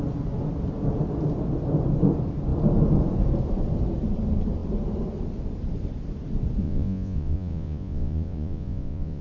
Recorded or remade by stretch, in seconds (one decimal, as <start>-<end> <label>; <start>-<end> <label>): 0.0-6.6 recorded; 6.6-9.2 remade